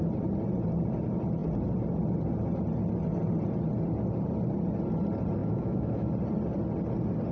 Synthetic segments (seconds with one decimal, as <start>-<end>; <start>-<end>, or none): 5.4-6.1